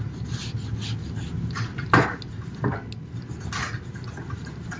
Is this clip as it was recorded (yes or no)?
yes